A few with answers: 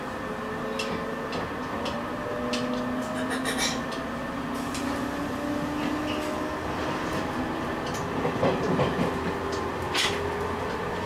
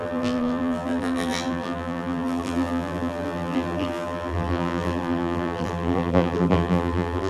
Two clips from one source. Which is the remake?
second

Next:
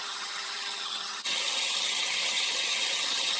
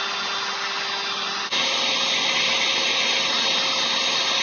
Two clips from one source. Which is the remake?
first